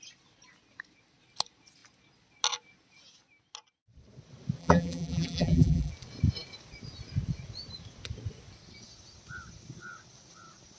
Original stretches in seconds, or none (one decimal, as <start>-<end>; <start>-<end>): 0.0-4.6; 5.9-10.8